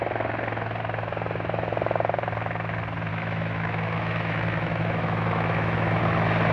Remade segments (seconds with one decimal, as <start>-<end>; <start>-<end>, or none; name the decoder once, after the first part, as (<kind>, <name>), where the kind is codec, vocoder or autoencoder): 3.1-6.0 (autoencoder, DAC-VAE)